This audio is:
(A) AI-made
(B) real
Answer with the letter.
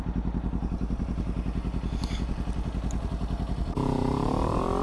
B